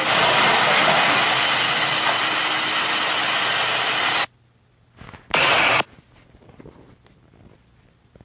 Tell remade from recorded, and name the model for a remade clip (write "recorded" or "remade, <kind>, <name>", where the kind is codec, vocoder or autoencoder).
recorded